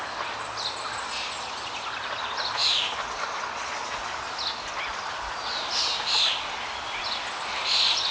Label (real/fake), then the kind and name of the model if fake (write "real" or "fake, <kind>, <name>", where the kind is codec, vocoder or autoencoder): real